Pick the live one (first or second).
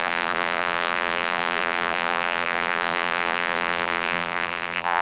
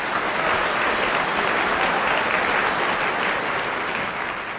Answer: second